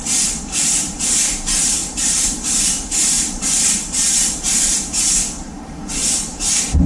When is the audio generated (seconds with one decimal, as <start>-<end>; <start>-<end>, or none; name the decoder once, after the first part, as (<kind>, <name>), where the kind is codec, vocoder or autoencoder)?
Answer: 1.8-4.8 (vocoder, BigVGAN v2)

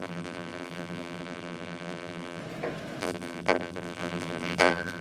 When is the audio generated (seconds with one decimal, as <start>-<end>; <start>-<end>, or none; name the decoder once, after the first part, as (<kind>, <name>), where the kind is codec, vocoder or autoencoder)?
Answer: 0.0-2.4 (vocoder, BigVGAN v2); 3.0-5.0

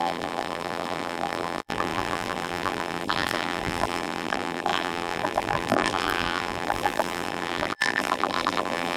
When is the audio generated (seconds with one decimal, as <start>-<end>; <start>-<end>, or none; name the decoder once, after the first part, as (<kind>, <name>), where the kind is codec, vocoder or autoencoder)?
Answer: 0.0-9.0 (vocoder, BigVGAN v2)

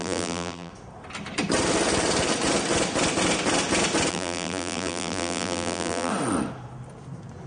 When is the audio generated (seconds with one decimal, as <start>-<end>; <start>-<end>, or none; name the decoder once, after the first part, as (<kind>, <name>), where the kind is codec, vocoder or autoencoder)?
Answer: 0.0-0.7 (vocoder, BigVGAN v2); 4.1-6.1

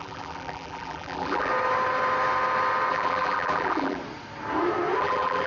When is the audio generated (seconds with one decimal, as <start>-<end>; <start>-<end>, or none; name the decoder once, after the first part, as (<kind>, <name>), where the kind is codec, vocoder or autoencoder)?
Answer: 0.0-1.5 (vocoder, BigVGAN v2); 2.9-4.0; 5.0-5.5

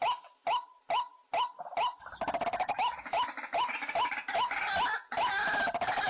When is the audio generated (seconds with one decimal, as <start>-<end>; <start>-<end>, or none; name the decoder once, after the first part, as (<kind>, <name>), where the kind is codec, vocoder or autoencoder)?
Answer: none